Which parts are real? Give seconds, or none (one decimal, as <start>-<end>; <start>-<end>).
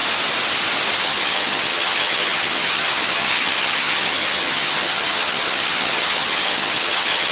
0.0-1.0